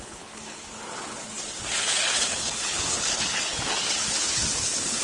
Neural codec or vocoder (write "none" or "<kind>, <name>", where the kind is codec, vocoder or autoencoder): codec, HILCodec